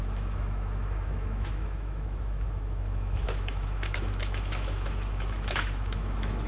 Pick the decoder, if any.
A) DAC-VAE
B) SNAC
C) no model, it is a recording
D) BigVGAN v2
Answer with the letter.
A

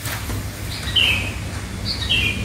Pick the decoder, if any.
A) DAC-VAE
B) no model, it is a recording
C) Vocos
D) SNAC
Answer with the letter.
B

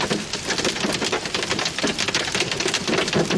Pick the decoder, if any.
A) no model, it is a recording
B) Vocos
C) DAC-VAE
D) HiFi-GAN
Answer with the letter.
A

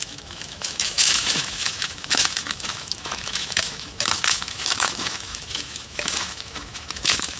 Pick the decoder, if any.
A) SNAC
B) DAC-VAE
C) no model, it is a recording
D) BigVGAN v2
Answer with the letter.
B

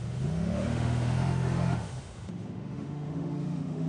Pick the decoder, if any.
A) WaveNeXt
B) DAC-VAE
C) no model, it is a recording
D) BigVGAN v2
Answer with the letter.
B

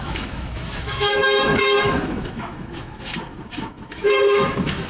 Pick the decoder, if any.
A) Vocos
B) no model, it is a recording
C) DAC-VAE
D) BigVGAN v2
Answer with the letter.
C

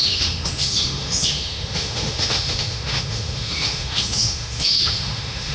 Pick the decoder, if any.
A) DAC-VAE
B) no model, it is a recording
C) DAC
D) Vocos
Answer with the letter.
A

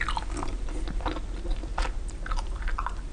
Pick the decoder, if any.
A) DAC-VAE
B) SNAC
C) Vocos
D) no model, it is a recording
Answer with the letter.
D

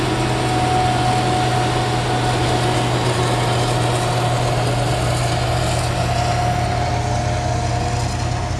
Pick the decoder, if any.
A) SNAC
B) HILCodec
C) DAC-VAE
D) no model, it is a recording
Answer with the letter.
D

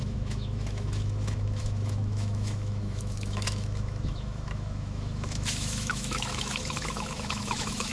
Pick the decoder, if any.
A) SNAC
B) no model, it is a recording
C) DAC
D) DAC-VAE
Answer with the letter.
D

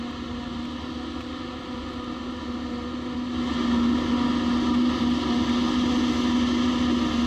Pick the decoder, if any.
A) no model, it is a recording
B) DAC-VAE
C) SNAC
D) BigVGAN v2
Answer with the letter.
A